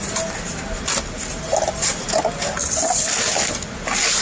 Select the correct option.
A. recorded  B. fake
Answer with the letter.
A